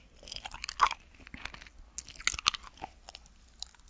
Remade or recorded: recorded